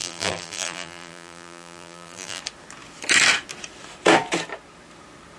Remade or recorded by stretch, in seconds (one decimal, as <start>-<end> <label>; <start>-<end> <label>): 0.0-2.4 remade; 2.4-5.4 recorded

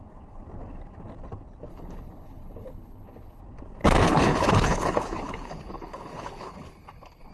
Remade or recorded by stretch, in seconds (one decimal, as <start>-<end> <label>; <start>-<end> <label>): 0.0-1.7 recorded; 1.7-3.4 remade; 3.4-3.8 recorded; 3.8-7.3 remade

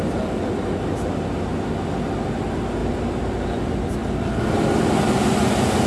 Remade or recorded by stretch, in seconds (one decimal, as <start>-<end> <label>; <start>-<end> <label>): 0.0-5.9 recorded

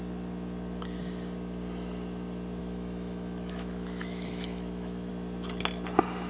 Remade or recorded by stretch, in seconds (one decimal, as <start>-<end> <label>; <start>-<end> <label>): 0.0-2.6 recorded; 2.6-5.1 remade; 5.1-6.3 recorded